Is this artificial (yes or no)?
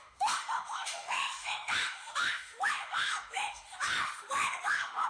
yes